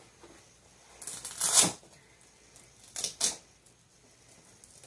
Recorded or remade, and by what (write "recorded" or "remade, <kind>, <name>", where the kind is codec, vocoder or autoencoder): recorded